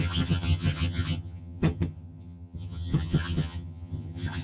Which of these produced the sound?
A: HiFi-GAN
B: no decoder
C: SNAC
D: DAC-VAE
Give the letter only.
A